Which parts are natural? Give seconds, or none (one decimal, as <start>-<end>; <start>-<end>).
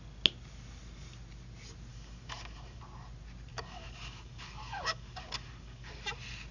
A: 0.0-1.9; 2.8-3.5; 5.9-6.5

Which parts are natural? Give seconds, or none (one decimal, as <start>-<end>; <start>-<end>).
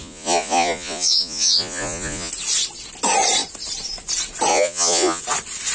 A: 2.3-4.5; 5.2-5.7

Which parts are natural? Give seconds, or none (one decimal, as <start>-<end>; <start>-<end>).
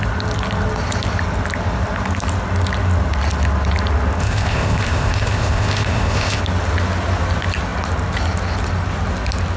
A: 0.0-4.2; 6.4-9.6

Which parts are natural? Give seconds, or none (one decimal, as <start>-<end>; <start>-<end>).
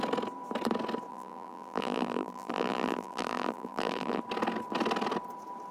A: 0.0-1.1; 4.2-5.7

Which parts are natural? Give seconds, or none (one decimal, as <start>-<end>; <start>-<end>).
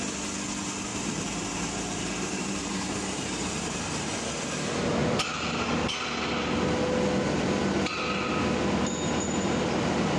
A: 0.0-0.9; 3.8-10.2